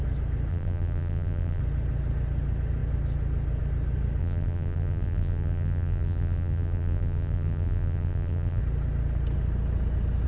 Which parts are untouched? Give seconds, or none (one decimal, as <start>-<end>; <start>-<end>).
0.0-0.5; 1.6-4.2; 8.6-10.3